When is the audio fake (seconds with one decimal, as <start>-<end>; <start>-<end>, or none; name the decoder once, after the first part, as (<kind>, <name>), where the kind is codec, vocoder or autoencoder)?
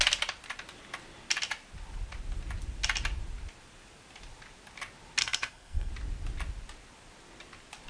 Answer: 5.2-5.9 (codec, SNAC)